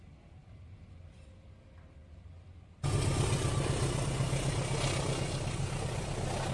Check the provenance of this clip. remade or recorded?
recorded